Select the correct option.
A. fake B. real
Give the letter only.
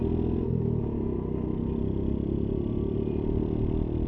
B